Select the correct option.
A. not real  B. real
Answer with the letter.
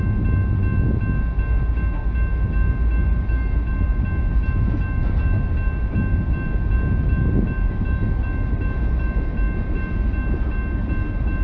B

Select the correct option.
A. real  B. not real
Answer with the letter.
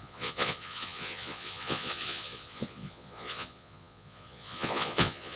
B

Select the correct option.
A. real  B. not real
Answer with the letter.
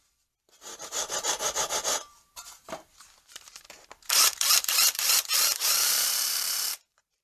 B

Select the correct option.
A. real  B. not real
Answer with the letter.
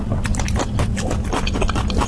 A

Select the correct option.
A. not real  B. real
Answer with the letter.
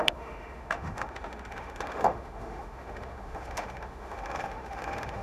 A